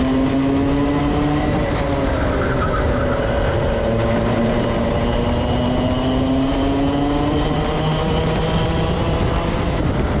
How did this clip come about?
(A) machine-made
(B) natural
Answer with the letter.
B